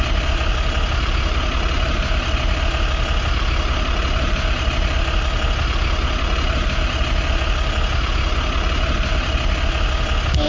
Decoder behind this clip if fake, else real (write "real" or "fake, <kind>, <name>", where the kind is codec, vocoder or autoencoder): real